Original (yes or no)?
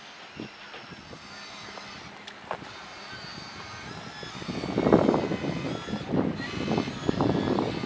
yes